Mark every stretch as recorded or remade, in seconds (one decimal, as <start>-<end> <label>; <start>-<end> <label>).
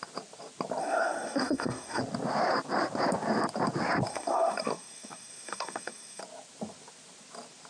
0.0-0.8 recorded; 0.8-2.0 remade; 2.0-4.1 recorded; 4.1-6.2 remade; 6.2-7.7 recorded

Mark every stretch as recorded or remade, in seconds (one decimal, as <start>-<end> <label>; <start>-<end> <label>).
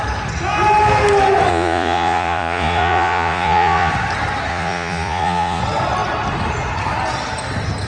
0.0-1.5 recorded; 1.5-3.9 remade; 3.9-4.5 recorded; 4.5-5.6 remade; 5.6-7.9 recorded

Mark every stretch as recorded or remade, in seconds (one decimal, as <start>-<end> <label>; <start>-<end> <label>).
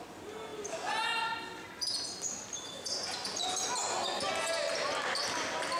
0.0-5.8 recorded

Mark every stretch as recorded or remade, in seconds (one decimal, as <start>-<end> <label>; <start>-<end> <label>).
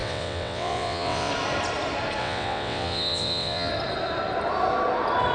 0.0-1.3 remade; 1.3-2.2 recorded; 2.2-3.7 remade; 3.7-5.3 recorded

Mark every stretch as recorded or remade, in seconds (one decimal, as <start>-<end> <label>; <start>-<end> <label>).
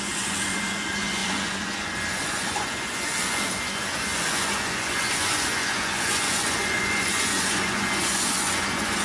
0.0-9.0 remade